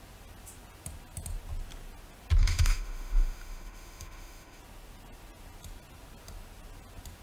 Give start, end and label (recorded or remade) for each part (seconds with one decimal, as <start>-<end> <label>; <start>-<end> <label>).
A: 0.0-2.4 recorded; 2.4-4.6 remade; 4.6-7.2 recorded